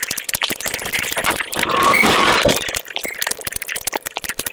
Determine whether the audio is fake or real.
fake